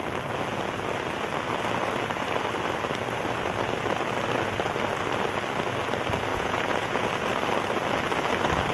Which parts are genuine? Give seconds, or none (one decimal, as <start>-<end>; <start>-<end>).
0.0-6.3; 7.1-8.7

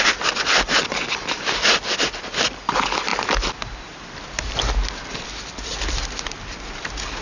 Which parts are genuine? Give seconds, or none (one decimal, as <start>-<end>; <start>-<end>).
0.0-7.2

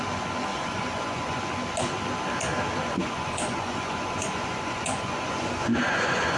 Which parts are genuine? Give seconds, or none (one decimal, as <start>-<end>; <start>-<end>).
0.0-0.5; 1.4-2.8

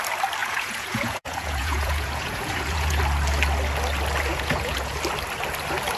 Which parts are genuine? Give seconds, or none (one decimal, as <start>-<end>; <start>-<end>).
0.0-0.4; 3.0-4.3; 5.0-6.0

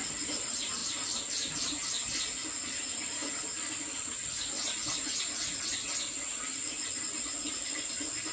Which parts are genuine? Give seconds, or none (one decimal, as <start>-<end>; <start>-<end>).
0.0-8.3